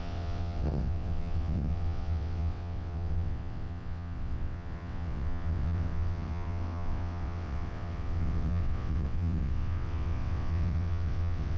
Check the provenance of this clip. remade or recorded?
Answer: remade